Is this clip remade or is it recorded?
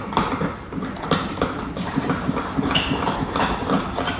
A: remade